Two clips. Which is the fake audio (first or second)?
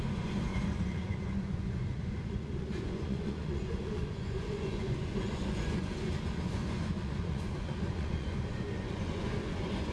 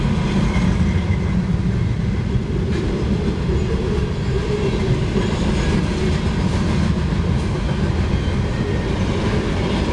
first